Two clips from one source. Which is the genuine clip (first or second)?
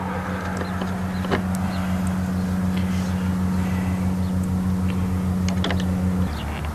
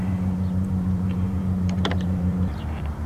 first